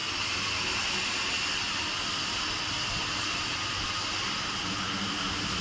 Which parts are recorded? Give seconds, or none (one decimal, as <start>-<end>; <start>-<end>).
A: 0.0-5.6